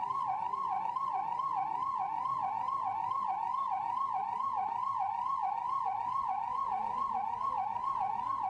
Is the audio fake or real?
real